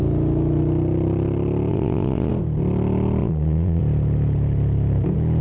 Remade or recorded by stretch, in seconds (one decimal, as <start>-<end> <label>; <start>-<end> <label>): 0.0-1.7 recorded; 1.7-2.3 remade; 2.3-3.2 recorded; 3.2-3.8 remade; 3.8-5.4 recorded